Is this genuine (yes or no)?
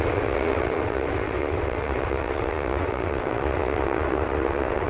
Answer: no